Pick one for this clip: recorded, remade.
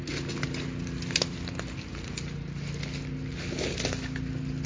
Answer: recorded